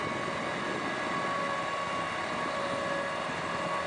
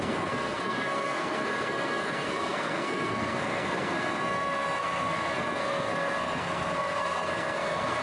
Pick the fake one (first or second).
second